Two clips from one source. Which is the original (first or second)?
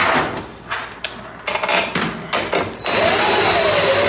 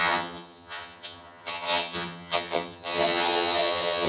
first